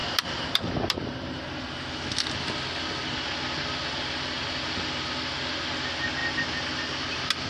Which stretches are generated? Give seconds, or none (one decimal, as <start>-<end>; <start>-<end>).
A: 0.0-1.6